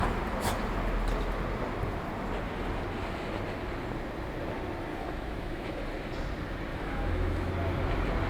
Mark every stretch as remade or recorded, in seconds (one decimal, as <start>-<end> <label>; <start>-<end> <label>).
0.0-4.9 recorded; 4.9-5.8 remade; 5.8-6.7 recorded; 6.7-7.5 remade; 7.5-8.3 recorded